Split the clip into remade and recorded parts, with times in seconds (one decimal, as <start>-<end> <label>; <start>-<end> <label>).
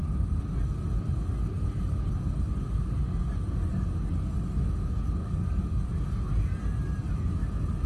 0.0-3.2 recorded; 3.2-3.7 remade; 3.7-5.2 recorded; 5.2-5.9 remade; 5.9-7.9 recorded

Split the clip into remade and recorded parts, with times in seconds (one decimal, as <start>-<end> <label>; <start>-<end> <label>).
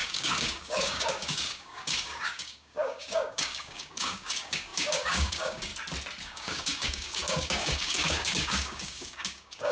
0.0-5.7 remade; 5.7-6.2 recorded; 6.2-9.7 remade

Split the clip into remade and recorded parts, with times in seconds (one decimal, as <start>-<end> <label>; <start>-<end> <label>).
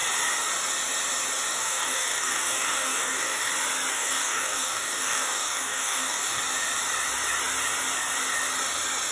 0.0-1.5 recorded; 1.5-3.5 remade; 3.5-3.9 recorded; 3.9-6.4 remade; 6.4-9.1 recorded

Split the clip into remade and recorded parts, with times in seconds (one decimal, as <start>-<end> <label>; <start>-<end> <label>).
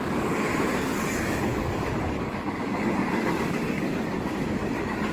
0.0-0.5 remade; 0.5-1.1 recorded; 1.1-5.1 remade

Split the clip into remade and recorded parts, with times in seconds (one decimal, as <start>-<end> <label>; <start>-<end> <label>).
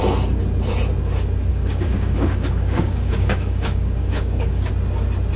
0.0-1.5 recorded; 1.5-4.7 remade; 4.7-5.4 recorded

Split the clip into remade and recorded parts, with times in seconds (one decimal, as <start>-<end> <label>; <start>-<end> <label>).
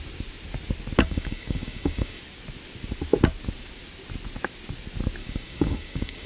0.0-1.0 recorded; 1.0-2.2 remade; 2.2-5.2 recorded; 5.2-6.3 remade